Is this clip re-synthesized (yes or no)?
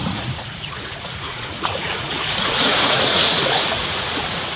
yes